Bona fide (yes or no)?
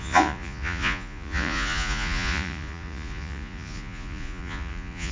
no